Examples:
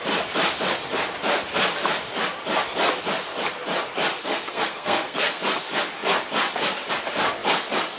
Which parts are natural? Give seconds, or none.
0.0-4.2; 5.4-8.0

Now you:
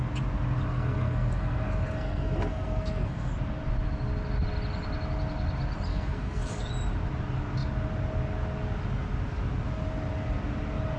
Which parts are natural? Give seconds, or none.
0.0-0.7; 3.3-5.9; 6.7-11.0

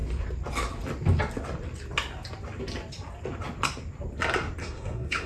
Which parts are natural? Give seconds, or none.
0.0-4.6